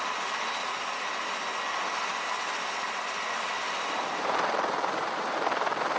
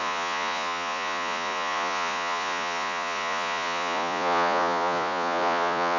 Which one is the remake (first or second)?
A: second